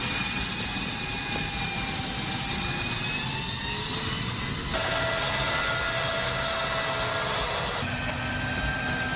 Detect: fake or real real